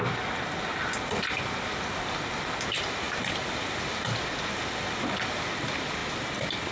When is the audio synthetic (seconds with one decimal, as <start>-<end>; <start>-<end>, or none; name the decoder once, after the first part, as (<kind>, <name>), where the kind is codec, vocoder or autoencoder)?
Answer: 6.0-6.7 (vocoder, BigVGAN v2)